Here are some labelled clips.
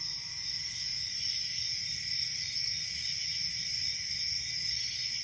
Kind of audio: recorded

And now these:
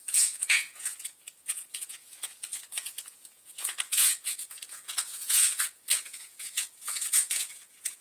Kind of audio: remade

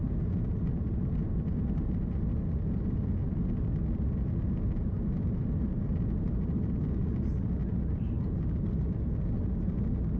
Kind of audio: recorded